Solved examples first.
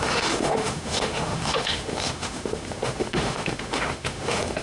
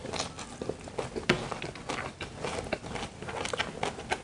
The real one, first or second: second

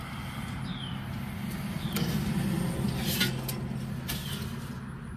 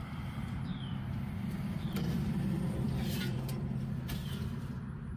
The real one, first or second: first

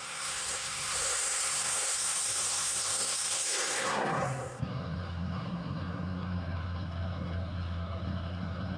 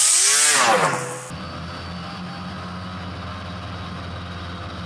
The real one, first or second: second